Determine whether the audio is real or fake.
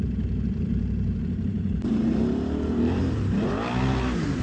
fake